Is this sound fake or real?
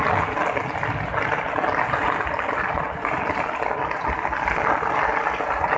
real